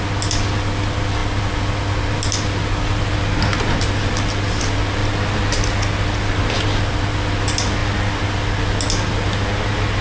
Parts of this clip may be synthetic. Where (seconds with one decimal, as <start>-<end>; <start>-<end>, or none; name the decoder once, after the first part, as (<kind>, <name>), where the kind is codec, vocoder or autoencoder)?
none